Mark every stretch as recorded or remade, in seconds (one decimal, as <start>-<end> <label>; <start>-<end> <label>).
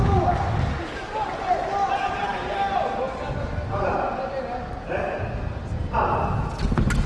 0.0-7.1 recorded